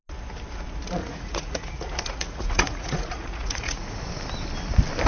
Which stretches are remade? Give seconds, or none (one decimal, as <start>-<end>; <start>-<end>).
1.0-4.0